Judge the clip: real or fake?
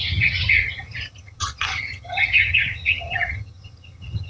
fake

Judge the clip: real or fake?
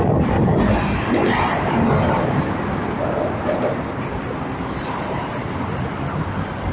real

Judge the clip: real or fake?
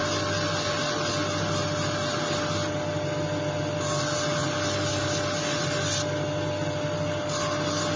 real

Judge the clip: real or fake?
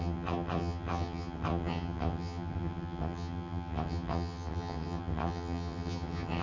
fake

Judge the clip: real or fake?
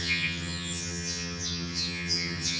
fake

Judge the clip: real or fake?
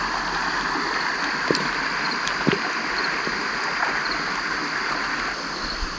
real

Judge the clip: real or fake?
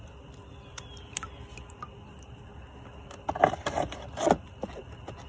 real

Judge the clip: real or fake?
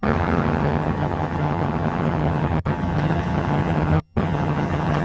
fake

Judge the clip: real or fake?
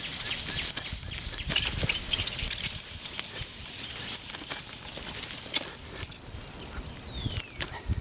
real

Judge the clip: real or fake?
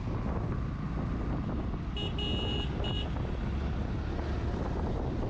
real